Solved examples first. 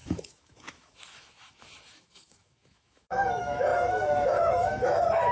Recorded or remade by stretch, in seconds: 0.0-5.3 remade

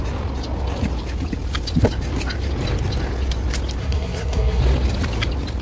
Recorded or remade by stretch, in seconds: 0.0-3.8 recorded; 3.8-4.6 remade; 4.6-5.6 recorded

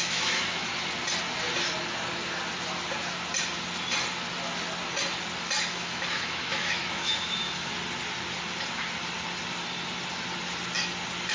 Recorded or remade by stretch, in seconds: 0.0-0.7 remade; 0.7-5.7 recorded; 5.7-7.7 remade; 7.7-11.3 recorded